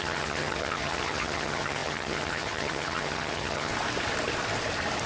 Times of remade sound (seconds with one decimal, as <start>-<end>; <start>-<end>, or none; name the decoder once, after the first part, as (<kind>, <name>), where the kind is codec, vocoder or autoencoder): 0.0-3.7 (vocoder, HiFi-GAN)